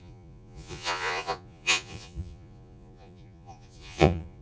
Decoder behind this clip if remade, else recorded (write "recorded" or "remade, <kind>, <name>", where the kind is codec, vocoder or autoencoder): remade, vocoder, Vocos